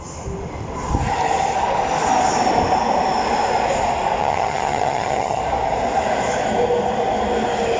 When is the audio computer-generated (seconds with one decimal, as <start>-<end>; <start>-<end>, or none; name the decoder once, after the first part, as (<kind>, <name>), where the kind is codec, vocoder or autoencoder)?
4.2-5.4 (vocoder, HiFi-GAN)